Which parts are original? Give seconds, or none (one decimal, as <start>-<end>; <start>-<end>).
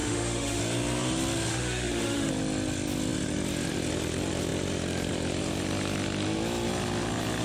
0.6-1.5; 2.3-7.4